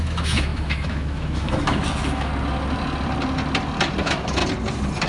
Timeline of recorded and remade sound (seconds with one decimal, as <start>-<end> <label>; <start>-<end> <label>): 0.0-2.3 remade; 2.3-4.0 recorded; 4.0-4.4 remade; 4.4-5.1 recorded